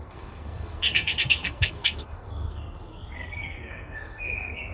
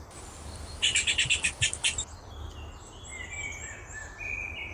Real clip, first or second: second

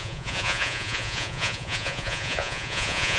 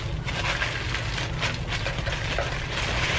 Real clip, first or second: second